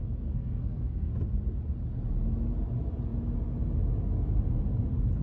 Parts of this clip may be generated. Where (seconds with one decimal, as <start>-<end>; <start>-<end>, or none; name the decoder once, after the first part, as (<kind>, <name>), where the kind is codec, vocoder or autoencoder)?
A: 0.0-1.1 (codec, SNAC)